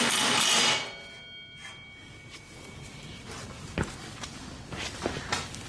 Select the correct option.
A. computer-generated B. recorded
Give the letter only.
B